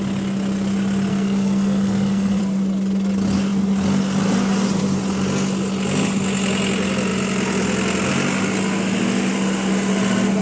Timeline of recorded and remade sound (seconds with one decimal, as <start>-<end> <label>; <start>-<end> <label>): 0.0-1.1 recorded; 1.1-2.4 remade; 2.4-10.4 recorded